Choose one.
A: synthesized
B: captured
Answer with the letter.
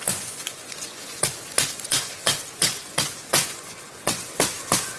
A